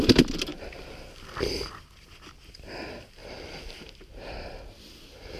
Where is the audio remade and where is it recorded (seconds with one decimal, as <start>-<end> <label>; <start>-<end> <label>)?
0.0-0.5 recorded; 0.5-1.8 remade; 1.8-3.2 recorded; 3.2-5.0 remade; 5.0-5.4 recorded